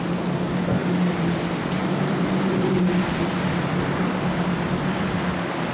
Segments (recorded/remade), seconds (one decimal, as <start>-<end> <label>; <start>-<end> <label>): 0.0-0.8 recorded; 0.8-1.4 remade; 1.4-1.8 recorded; 1.8-5.2 remade; 5.2-5.7 recorded